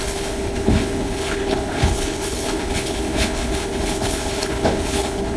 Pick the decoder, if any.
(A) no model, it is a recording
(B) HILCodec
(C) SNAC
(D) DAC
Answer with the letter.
B